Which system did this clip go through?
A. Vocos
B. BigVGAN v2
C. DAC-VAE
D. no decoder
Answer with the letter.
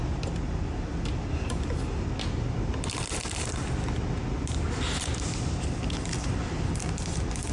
D